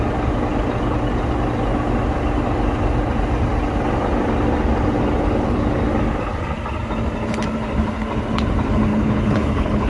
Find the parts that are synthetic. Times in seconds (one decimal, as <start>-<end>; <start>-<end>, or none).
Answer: 8.9-9.9